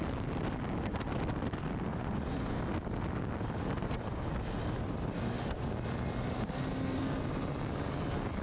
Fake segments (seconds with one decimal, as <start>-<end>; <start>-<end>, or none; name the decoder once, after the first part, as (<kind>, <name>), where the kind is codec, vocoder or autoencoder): 1.9-2.6 (vocoder, Vocos); 3.8-4.3

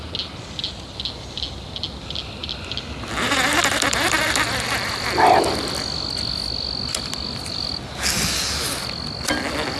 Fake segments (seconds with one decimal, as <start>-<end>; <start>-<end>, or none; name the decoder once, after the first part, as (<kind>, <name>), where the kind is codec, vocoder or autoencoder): none

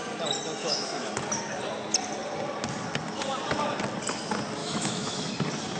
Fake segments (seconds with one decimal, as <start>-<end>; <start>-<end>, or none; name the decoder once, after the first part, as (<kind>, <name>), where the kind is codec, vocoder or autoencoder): 0.6-1.1 (autoencoder, DAC-VAE); 4.6-5.3

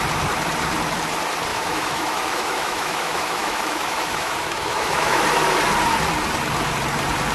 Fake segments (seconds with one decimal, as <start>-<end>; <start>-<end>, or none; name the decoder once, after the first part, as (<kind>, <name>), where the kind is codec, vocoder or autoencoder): 1.5-5.2 (autoencoder, DAC-VAE)

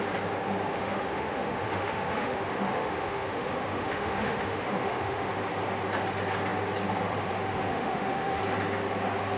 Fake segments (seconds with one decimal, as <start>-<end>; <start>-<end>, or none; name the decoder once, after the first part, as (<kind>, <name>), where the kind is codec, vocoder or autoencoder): 0.7-5.3 (autoencoder, DAC-VAE); 7.7-8.4

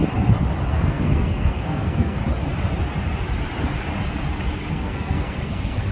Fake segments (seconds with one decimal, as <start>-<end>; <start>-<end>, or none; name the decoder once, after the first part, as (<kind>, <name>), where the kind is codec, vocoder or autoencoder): 0.7-2.2 (codec, SNAC); 4.7-5.9